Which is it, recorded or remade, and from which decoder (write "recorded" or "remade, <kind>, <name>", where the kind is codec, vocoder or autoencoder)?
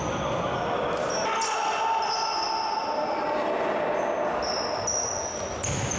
recorded